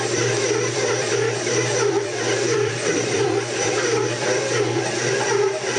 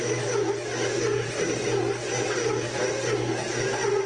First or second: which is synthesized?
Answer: first